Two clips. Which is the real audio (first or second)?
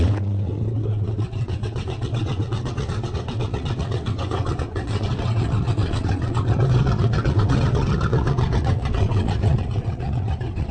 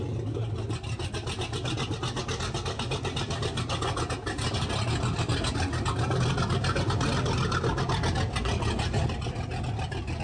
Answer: second